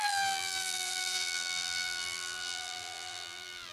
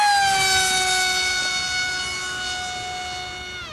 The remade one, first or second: first